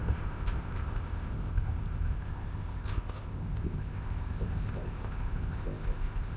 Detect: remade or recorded remade